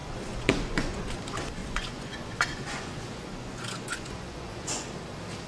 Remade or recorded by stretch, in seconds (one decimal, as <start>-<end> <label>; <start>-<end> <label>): 0.0-1.1 remade; 1.1-1.6 recorded; 1.6-4.9 remade; 4.9-5.5 recorded